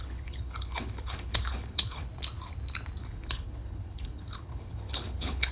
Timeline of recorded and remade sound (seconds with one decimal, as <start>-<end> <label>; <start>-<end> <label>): 0.0-2.1 remade; 2.1-3.0 recorded; 3.0-5.5 remade